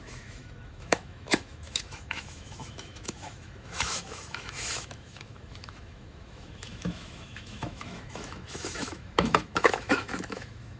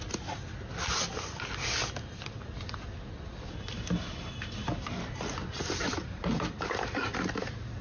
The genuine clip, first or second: second